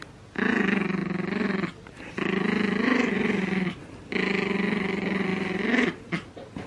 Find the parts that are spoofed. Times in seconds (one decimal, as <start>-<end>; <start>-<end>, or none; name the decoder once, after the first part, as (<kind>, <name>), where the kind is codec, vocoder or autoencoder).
0.0-5.3 (vocoder, BigVGAN v2); 6.1-6.7